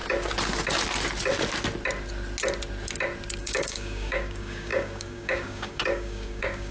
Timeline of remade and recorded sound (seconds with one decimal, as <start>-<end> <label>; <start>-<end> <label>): 0.0-3.4 recorded; 3.4-6.7 remade